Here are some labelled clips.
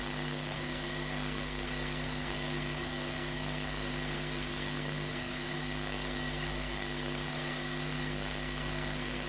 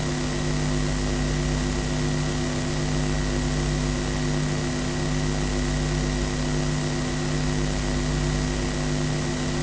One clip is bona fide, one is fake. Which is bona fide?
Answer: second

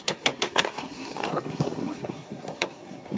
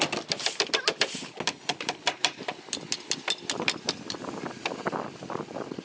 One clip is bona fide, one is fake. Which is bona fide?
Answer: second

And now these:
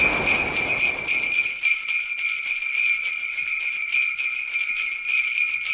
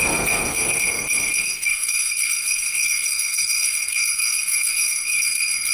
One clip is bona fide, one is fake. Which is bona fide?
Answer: first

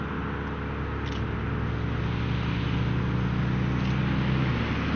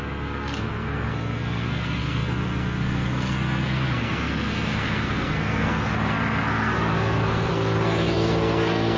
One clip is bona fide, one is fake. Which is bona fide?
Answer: first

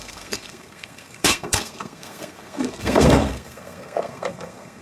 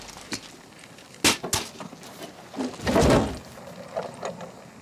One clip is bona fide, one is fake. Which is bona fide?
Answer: second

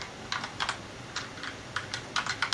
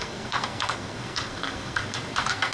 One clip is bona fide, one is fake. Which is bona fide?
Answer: first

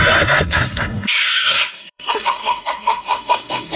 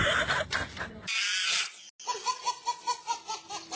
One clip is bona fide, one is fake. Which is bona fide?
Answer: second